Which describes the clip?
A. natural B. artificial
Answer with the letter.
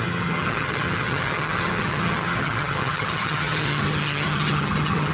B